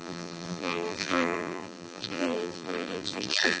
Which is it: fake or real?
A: fake